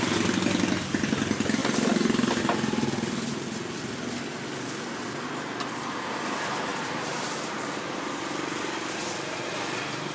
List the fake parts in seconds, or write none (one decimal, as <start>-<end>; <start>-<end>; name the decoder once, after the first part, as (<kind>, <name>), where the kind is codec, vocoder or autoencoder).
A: 6.7-8.1 (vocoder, BigVGAN v2)